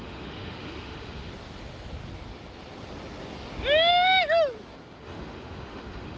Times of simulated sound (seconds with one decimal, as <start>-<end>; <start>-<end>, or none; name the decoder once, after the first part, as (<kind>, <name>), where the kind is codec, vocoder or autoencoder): 0.0-1.3 (autoencoder, DAC-VAE); 5.0-6.2